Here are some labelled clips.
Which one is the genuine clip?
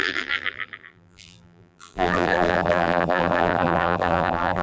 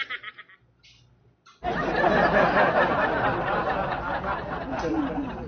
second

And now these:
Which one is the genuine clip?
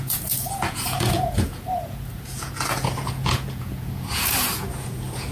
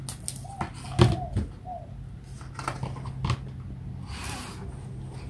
second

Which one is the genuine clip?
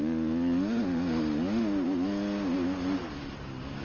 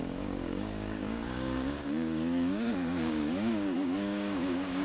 first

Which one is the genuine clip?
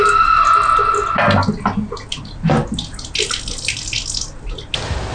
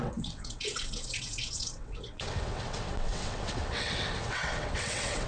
first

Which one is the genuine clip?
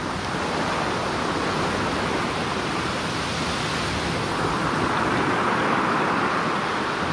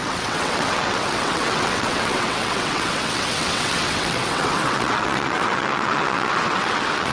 first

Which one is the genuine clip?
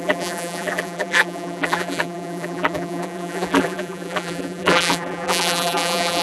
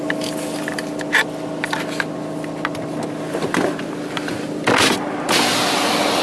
second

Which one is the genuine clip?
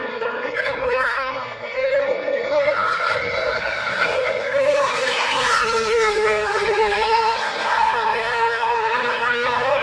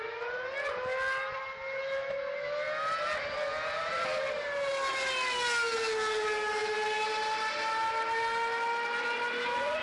second